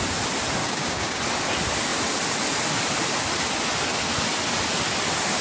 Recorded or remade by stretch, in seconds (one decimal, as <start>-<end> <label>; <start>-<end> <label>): 0.0-0.6 recorded; 0.6-1.2 remade; 1.2-5.4 recorded